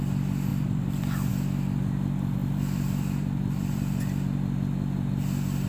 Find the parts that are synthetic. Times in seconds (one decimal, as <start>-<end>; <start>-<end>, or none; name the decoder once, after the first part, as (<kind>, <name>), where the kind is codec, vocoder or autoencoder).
0.5-1.3 (vocoder, BigVGAN v2); 2.4-4.0